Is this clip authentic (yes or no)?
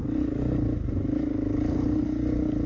yes